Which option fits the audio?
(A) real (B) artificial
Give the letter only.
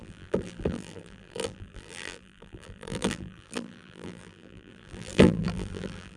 B